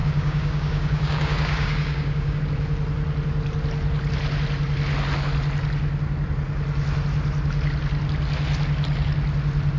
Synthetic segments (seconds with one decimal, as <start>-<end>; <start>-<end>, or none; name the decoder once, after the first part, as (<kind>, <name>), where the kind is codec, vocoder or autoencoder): 0.0-2.4 (codec, DAC)